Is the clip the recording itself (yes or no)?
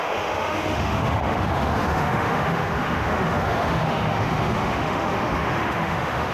no